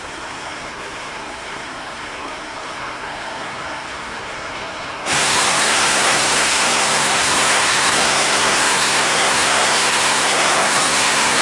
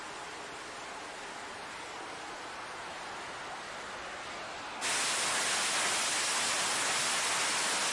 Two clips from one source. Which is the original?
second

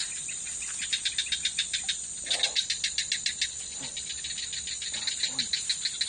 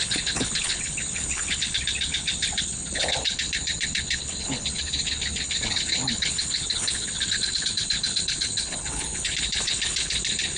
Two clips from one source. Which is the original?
first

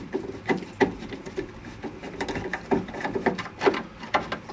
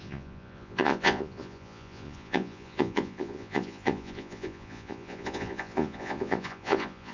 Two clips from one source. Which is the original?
first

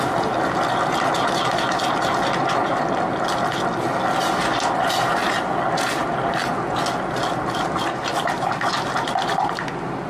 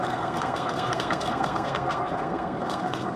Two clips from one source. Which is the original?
first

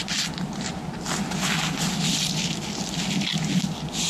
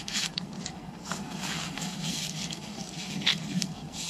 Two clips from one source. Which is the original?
first